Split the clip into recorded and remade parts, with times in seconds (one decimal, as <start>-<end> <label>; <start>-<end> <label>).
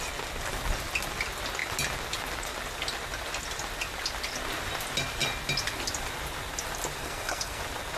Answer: 0.0-7.0 recorded; 7.0-7.6 remade; 7.6-8.0 recorded